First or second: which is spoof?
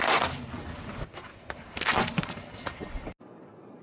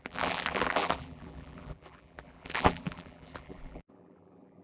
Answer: second